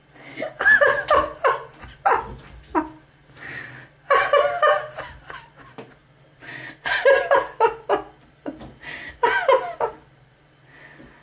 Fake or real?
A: real